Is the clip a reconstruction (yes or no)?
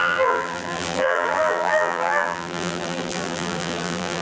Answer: yes